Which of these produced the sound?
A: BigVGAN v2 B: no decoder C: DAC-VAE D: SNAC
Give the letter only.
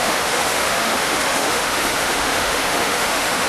C